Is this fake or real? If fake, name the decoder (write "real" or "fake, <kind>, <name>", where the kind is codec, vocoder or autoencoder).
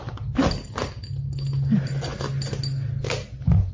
real